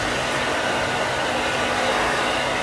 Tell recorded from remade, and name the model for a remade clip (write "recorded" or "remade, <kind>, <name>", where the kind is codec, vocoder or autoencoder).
recorded